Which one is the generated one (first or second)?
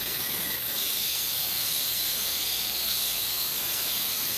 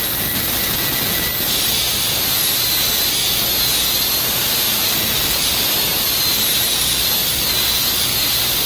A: first